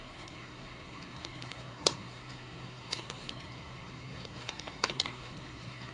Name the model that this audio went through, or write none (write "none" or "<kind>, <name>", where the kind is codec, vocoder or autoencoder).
codec, SNAC